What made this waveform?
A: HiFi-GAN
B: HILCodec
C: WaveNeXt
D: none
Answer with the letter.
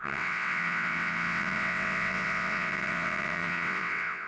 C